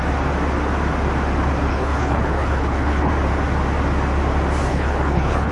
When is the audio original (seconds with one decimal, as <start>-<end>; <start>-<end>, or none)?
0.0-1.7; 3.1-4.7